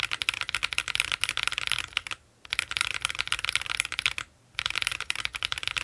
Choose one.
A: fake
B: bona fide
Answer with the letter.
B